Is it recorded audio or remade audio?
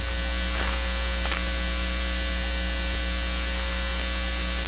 recorded